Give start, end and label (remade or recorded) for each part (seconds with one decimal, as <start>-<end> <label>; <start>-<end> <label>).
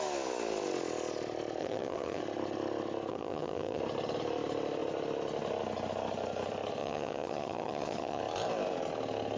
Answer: 0.0-1.6 recorded; 1.6-2.2 remade; 2.2-3.1 recorded; 3.1-3.8 remade; 3.8-6.8 recorded; 6.8-8.2 remade; 8.2-9.4 recorded